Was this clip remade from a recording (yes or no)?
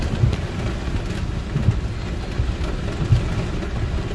no